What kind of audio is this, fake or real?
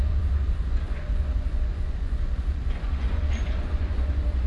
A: fake